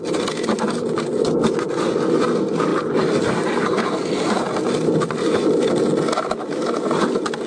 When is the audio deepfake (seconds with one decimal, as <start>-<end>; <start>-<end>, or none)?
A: none